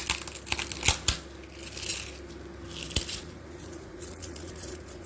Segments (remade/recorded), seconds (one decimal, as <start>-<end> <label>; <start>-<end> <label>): 0.0-3.1 recorded; 3.1-5.1 remade